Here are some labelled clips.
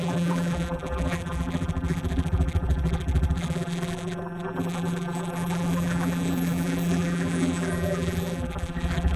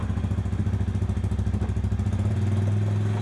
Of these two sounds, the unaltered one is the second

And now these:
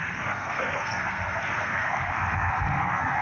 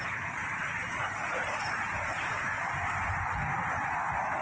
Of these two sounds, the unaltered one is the second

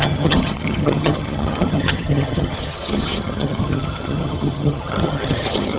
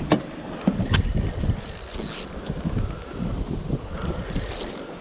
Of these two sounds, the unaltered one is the second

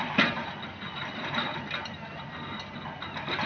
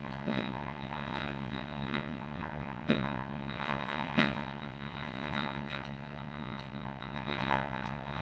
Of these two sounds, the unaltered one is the first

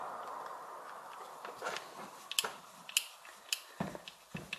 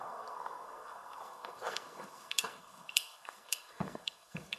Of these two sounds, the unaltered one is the first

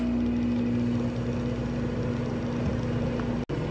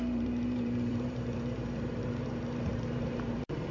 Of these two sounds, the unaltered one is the first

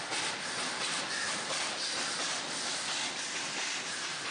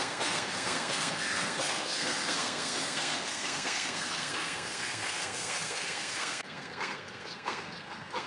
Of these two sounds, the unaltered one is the first